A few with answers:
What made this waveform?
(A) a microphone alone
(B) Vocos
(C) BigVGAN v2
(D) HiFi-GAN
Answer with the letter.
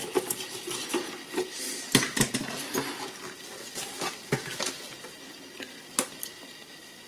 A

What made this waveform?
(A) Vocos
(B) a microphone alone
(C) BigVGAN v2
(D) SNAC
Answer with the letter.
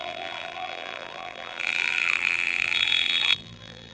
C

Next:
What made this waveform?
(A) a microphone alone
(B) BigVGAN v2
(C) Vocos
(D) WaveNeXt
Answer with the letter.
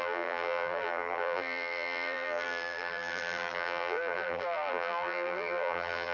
B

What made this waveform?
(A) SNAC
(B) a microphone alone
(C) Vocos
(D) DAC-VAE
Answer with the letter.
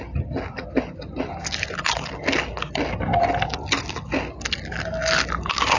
B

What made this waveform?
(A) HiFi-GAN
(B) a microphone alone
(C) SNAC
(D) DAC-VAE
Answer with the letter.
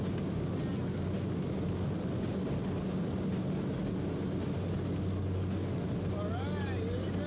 B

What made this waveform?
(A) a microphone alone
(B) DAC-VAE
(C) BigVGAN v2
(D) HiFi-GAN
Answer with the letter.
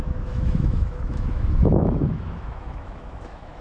B